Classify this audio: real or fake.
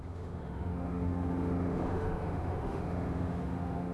fake